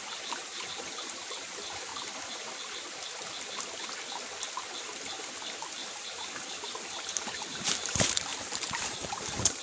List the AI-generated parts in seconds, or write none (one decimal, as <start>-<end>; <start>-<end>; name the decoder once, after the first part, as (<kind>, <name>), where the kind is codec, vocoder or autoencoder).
0.0-1.9 (vocoder, BigVGAN v2); 5.9-9.6